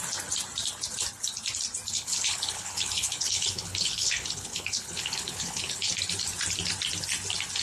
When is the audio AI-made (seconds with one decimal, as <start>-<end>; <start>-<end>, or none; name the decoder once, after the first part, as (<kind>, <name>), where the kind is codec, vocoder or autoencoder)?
1.9-5.9 (codec, HILCodec)